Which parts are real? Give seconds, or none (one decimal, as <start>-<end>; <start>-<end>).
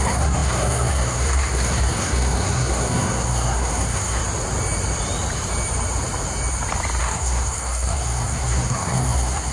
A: 4.2-7.0